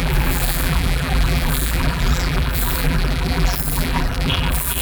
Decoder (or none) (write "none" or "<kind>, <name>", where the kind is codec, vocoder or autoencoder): vocoder, BigVGAN v2